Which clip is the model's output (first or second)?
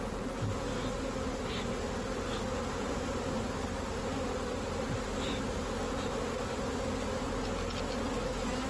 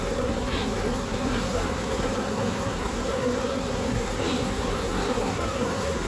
second